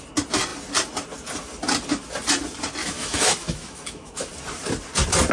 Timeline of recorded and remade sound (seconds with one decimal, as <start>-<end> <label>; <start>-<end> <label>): 0.0-2.8 recorded; 2.8-4.3 remade; 4.3-5.3 recorded